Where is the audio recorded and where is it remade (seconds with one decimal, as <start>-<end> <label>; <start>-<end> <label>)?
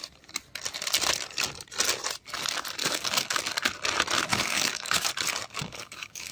0.0-2.8 recorded; 2.8-3.4 remade; 3.4-4.3 recorded; 4.3-5.1 remade; 5.1-5.6 recorded; 5.6-6.3 remade